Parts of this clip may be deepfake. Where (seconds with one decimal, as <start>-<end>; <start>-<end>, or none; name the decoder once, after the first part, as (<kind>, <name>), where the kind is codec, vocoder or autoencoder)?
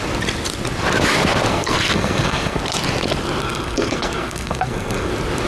1.5-2.6 (codec, SNAC); 3.4-5.1